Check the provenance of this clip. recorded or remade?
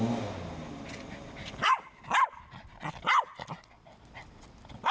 recorded